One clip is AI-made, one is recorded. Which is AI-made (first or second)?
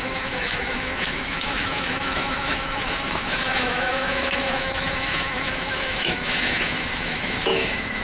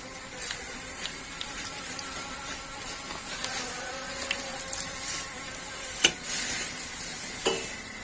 first